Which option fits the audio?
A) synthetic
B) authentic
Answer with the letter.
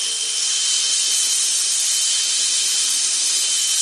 B